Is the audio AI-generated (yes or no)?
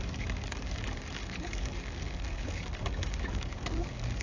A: yes